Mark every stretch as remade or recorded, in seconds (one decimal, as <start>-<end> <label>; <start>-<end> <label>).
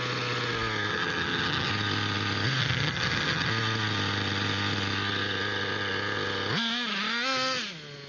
0.0-0.9 recorded; 0.9-1.7 remade; 1.7-2.6 recorded; 2.6-3.5 remade; 3.5-8.1 recorded